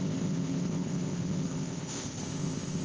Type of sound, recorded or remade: remade